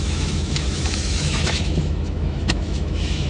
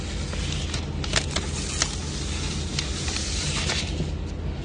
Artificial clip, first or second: first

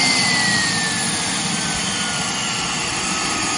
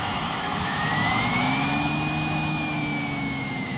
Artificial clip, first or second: second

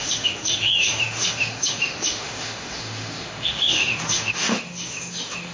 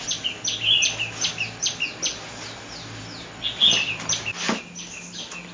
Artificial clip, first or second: first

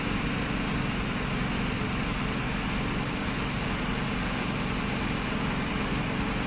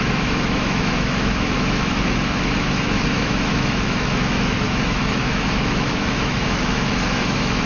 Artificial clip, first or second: second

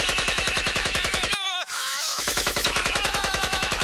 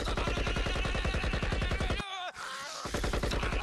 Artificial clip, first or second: first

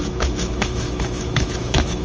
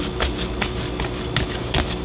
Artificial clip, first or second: first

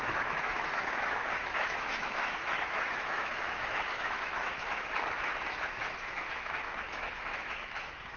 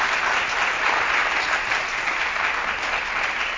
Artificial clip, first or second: first